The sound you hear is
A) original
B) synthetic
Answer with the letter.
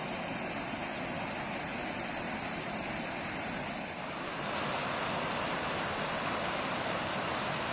A